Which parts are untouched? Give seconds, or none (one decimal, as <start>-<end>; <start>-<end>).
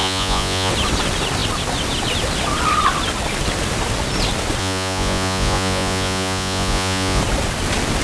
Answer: 0.7-4.6; 7.2-8.0